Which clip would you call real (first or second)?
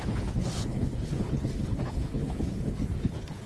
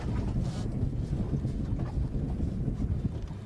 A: second